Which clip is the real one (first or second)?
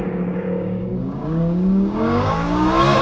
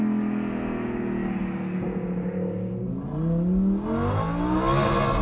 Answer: second